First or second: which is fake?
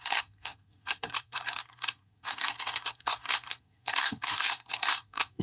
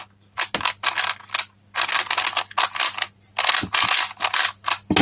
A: first